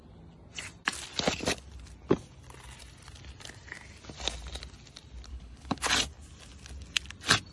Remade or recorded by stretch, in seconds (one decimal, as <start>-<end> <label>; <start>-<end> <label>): 0.0-5.3 recorded; 5.3-5.9 remade; 5.9-7.5 recorded